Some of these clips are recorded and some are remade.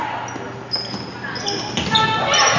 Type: recorded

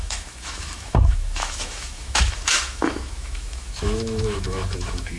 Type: remade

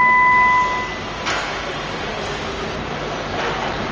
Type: recorded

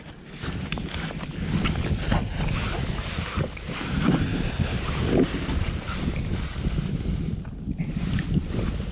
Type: recorded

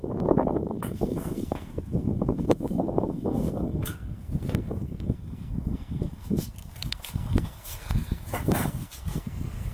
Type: remade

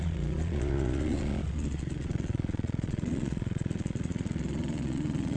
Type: remade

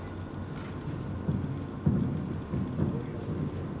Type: recorded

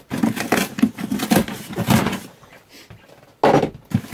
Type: recorded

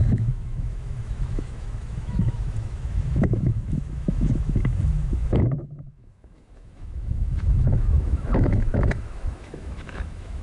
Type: remade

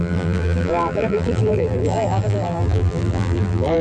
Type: remade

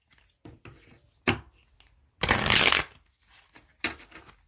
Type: recorded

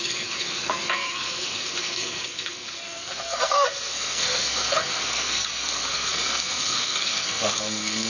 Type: remade